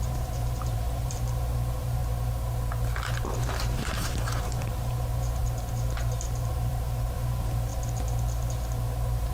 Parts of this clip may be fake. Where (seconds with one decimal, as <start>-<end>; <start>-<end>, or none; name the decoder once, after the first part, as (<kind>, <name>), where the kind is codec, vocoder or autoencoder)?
0.0-2.0 (vocoder, BigVGAN v2); 3.4-5.4; 6.5-7.7

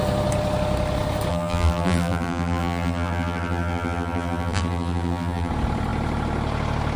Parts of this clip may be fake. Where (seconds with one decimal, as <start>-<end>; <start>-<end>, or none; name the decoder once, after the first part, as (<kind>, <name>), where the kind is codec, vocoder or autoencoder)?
1.3-5.5 (vocoder, BigVGAN v2)

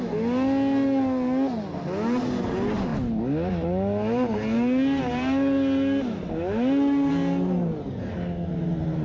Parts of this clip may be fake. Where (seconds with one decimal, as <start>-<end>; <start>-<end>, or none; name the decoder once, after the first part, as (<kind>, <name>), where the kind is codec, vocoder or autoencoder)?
none

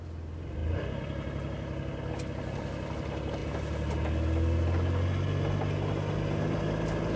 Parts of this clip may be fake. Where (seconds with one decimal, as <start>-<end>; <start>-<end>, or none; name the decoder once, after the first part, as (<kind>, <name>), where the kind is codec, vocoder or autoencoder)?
0.6-2.1 (vocoder, BigVGAN v2)

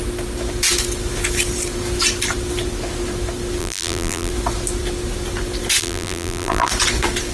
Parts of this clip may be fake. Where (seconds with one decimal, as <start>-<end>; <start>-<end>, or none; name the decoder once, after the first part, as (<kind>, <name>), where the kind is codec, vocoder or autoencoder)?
3.6-4.3 (vocoder, BigVGAN v2); 5.8-6.7